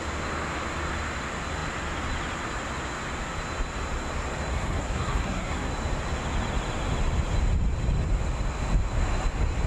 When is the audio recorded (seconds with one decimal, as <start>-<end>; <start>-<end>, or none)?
0.0-4.5; 5.7-9.7